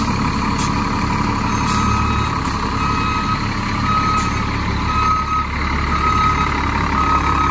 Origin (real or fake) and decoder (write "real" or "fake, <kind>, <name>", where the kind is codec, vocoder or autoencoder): real